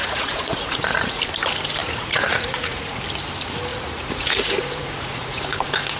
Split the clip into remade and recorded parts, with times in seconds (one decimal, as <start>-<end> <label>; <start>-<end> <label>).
0.0-1.2 remade; 1.2-1.8 recorded; 1.8-3.0 remade; 3.0-3.7 recorded; 3.7-5.4 remade; 5.4-6.0 recorded